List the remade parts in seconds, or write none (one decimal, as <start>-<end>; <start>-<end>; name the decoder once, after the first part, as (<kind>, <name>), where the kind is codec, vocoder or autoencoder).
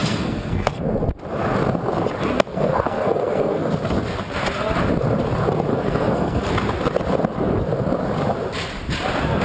0.0-0.8 (codec, SNAC); 2.5-3.7; 5.7-6.5